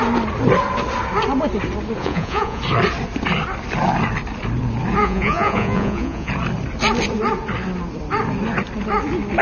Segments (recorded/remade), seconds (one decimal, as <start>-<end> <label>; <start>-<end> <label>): 0.0-2.0 recorded; 2.0-2.6 remade; 2.6-5.0 recorded; 5.0-6.3 remade; 6.3-9.4 recorded